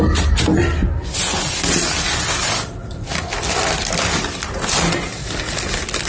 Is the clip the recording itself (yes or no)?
yes